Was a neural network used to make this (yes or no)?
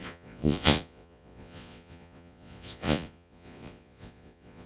yes